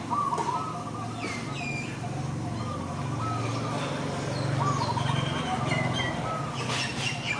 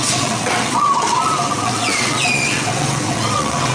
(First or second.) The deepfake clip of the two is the second